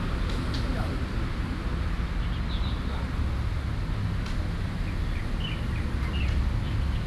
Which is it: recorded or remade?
recorded